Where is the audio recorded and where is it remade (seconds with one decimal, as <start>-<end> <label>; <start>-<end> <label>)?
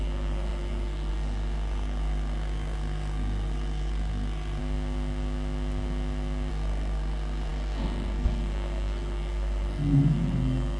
0.0-4.6 remade; 4.6-6.5 recorded; 6.5-10.8 remade